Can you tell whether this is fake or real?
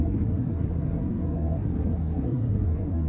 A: fake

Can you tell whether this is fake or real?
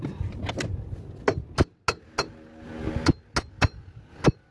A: real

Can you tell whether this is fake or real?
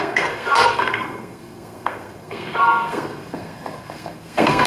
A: fake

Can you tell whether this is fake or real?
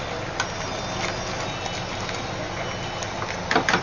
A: real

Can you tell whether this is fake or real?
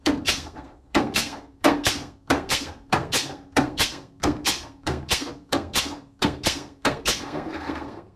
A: fake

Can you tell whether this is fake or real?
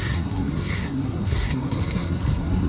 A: fake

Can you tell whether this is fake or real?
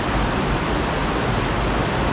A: real